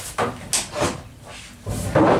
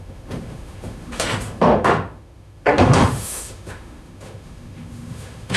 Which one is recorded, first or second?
first